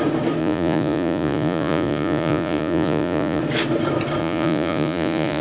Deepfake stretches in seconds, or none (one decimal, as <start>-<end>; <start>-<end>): 0.4-3.4; 4.2-5.4